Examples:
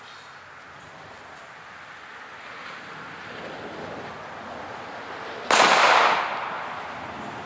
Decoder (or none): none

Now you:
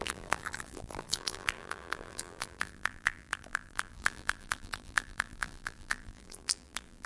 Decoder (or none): vocoder, BigVGAN v2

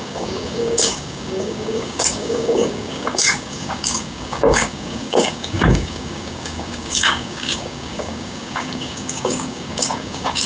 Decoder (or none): codec, DAC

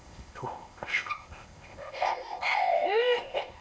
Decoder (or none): codec, ZipCodec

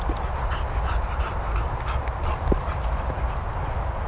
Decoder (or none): none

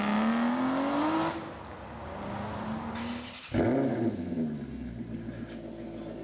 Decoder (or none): none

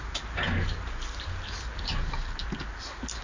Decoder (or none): none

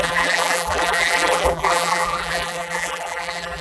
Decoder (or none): vocoder, BigVGAN v2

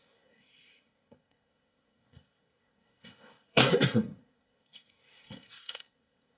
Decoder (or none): codec, SNAC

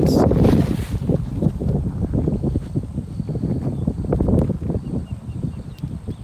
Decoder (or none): none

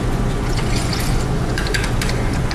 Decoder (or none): vocoder, Vocos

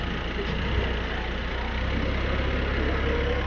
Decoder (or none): none